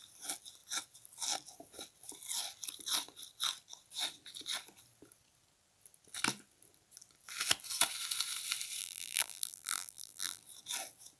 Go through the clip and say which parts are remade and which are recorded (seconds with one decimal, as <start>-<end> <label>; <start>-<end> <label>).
0.0-8.8 recorded; 8.8-10.4 remade; 10.4-11.2 recorded